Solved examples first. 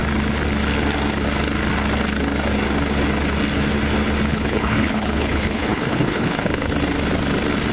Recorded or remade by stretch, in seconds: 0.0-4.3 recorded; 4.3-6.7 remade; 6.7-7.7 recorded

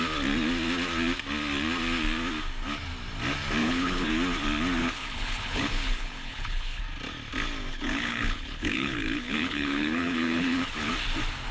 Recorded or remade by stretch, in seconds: 0.0-3.6 recorded; 3.6-4.1 remade; 4.1-4.8 recorded; 4.8-6.8 remade; 6.8-7.7 recorded; 7.7-10.9 remade; 10.9-11.5 recorded

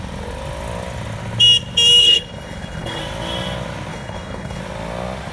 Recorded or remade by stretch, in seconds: 0.0-2.0 recorded; 2.0-3.0 remade; 3.0-3.9 recorded; 3.9-4.6 remade; 4.6-5.3 recorded

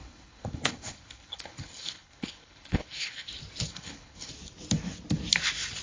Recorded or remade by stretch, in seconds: 0.0-3.3 remade; 3.3-3.7 recorded; 3.7-4.3 remade; 4.3-5.8 recorded

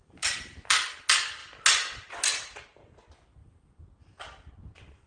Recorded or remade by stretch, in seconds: 0.0-5.1 recorded

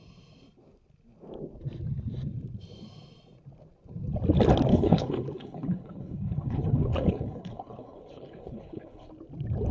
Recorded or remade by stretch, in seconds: 0.0-4.7 recorded; 4.7-9.1 remade; 9.1-9.7 recorded